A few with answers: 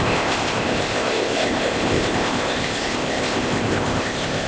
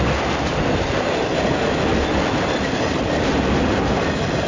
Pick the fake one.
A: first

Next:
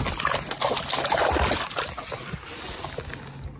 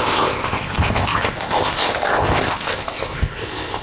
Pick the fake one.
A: second